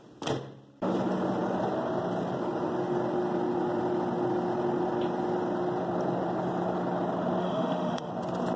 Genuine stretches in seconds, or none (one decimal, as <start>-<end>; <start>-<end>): 0.0-7.4; 8.1-8.6